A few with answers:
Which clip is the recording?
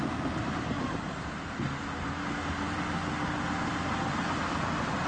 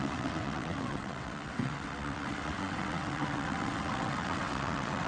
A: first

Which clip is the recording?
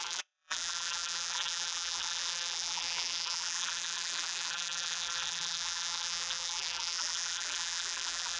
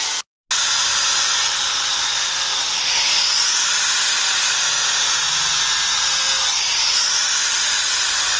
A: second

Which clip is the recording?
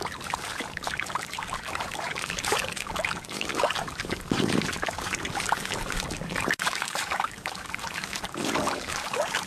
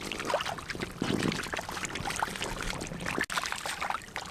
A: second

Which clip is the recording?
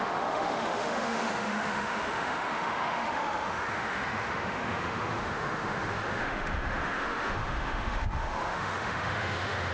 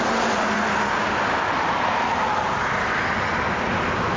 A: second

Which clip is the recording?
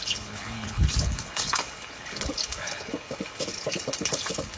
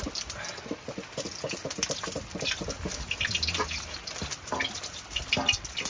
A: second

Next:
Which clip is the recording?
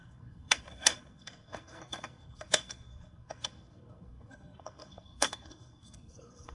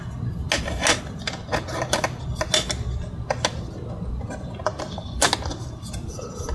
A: second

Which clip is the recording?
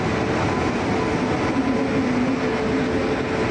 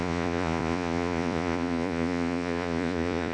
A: first